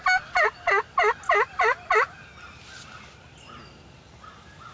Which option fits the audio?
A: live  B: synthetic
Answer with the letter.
A